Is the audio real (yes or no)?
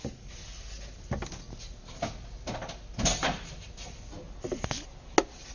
yes